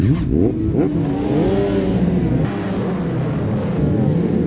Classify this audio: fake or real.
real